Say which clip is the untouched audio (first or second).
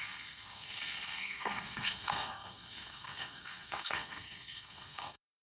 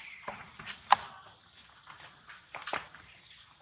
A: second